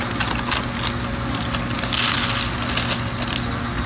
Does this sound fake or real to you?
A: real